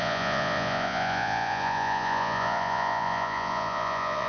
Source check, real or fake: fake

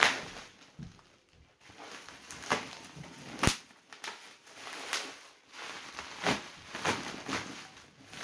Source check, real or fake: real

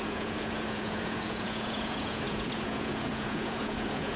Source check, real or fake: fake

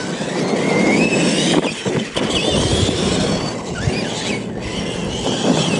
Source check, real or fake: real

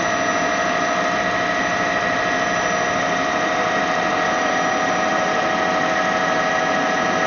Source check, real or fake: real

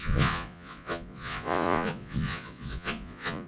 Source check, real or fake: fake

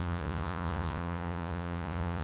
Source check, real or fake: fake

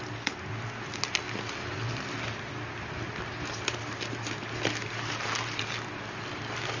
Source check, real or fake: real